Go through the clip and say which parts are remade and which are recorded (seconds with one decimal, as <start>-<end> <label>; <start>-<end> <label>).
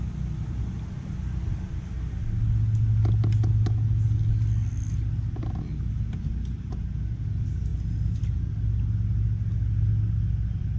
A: 0.0-10.8 recorded